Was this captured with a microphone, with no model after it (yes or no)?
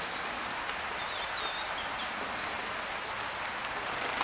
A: yes